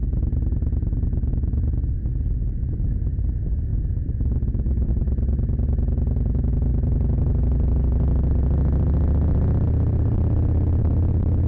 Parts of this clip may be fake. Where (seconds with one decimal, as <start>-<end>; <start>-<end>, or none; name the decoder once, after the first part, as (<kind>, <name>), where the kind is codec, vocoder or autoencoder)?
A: none